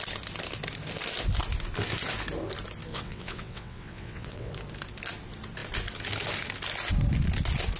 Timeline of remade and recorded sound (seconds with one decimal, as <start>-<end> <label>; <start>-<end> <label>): 0.0-2.9 recorded; 2.9-4.5 remade; 4.5-7.8 recorded